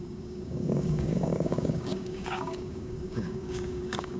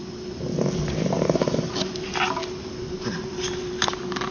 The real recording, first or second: second